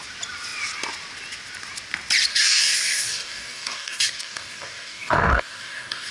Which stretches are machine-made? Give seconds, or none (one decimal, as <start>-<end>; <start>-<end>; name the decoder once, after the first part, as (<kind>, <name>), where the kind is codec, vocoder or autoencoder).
2.3-6.1 (codec, DAC)